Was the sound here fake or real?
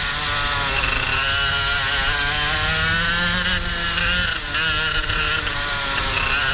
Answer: real